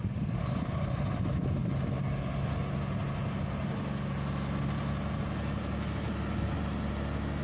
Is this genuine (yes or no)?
yes